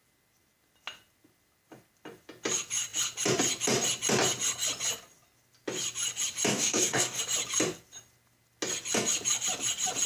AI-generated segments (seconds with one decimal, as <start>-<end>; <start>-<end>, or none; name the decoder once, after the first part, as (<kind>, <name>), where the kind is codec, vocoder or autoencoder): 6.5-7.2 (codec, DAC)